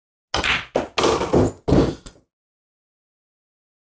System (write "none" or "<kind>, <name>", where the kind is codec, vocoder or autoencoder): none